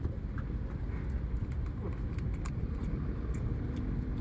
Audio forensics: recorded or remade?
remade